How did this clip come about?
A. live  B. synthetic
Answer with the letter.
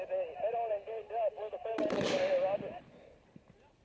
A